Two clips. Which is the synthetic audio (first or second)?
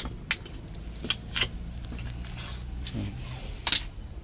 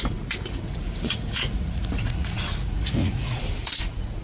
second